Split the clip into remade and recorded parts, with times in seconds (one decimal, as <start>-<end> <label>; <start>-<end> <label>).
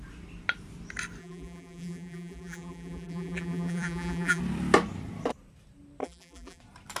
0.0-1.2 recorded; 1.2-4.4 remade; 4.4-6.0 recorded; 6.0-6.6 remade; 6.6-7.0 recorded